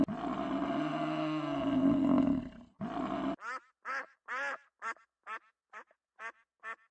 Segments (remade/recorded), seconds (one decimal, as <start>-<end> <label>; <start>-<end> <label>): 0.0-6.9 recorded